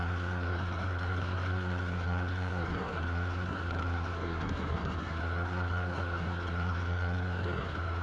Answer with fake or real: fake